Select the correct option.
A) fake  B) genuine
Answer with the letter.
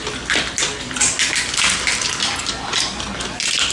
B